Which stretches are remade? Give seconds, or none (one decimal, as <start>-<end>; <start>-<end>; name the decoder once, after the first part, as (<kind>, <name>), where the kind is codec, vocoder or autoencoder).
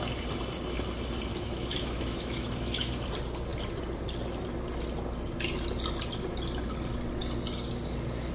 1.3-2.9 (autoencoder, DAC-VAE)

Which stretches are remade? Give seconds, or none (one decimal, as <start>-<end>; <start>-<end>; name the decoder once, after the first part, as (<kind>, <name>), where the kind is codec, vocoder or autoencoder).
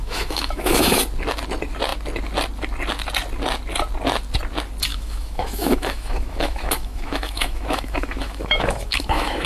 0.0-1.0 (autoencoder, DAC-VAE); 4.9-9.5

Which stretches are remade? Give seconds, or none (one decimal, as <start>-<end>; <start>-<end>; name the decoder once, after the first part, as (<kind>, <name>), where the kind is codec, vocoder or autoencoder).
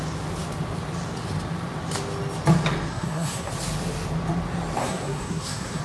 2.9-3.5 (codec, SNAC); 4.8-5.8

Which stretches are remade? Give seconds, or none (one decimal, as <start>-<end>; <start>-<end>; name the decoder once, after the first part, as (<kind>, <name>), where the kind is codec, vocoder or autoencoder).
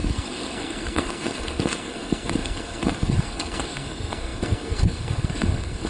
0.0-5.9 (codec, SNAC)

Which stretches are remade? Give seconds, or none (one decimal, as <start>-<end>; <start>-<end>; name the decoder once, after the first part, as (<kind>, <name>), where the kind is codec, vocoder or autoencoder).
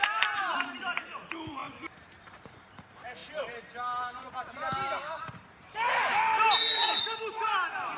0.0-8.0 (vocoder, BigVGAN v2)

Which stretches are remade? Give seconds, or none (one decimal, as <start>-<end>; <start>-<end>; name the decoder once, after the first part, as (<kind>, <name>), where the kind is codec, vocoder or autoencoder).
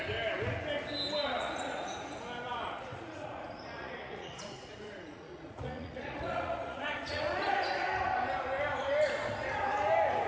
1.2-2.1 (vocoder, Vocos); 2.5-7.4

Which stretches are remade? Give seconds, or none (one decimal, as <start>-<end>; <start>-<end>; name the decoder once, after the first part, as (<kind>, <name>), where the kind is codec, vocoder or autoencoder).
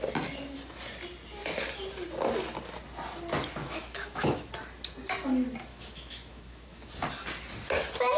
3.6-4.5 (autoencoder, DAC-VAE); 5.7-6.9